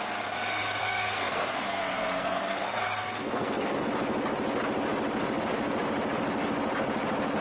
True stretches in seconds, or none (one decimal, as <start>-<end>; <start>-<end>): 0.0-0.8; 3.9-7.4